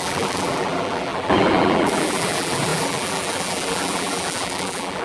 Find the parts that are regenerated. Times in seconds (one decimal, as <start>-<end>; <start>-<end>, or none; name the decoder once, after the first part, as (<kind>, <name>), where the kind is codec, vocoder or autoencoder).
0.0-5.0 (vocoder, BigVGAN v2)